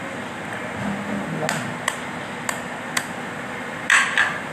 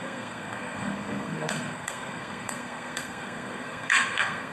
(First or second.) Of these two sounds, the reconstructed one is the second